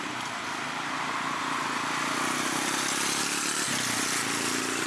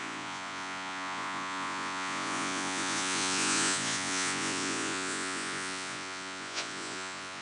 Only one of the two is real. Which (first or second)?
first